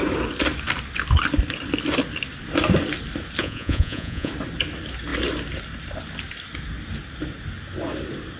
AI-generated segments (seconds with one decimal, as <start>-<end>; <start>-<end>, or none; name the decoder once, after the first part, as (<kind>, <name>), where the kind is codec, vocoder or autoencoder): 3.4-4.3 (vocoder, Vocos)